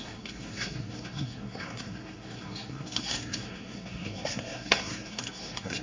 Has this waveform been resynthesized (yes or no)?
yes